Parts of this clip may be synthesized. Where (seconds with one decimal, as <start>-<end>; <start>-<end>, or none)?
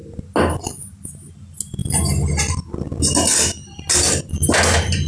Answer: none